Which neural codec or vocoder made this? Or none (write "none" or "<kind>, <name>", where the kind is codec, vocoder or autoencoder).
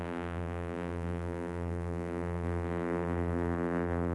vocoder, BigVGAN v2